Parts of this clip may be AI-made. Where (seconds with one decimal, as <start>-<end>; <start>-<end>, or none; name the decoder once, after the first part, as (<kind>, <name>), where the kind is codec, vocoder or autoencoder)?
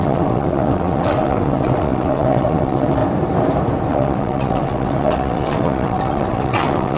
0.0-3.0 (vocoder, WaveNeXt); 3.9-7.0